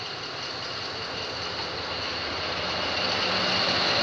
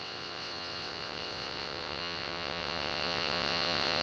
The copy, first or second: second